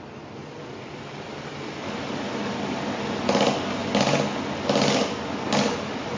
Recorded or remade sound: recorded